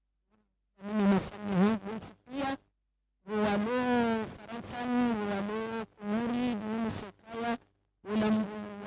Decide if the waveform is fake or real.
real